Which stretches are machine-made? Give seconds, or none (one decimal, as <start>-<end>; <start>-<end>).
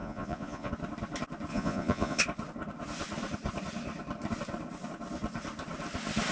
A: 0.0-0.7; 1.5-2.2